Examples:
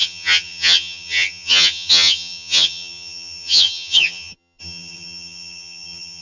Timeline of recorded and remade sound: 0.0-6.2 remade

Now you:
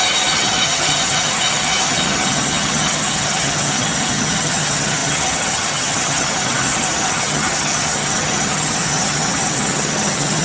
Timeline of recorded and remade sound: 0.0-10.4 remade

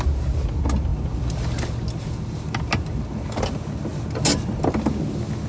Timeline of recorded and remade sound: 0.0-5.5 recorded

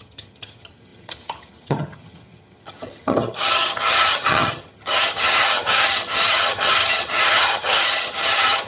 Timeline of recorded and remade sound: 0.0-8.7 remade